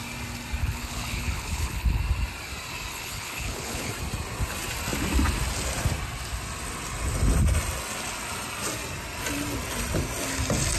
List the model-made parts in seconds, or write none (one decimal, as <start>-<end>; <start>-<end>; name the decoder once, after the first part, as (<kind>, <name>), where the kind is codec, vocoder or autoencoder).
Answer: 0.6-2.0 (codec, HILCodec); 2.9-3.9